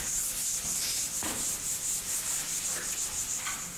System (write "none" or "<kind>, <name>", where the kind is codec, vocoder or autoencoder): none